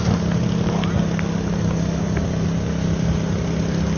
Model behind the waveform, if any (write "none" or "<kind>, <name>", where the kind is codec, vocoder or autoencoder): none